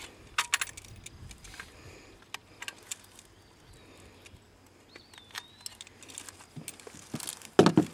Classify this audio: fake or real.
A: real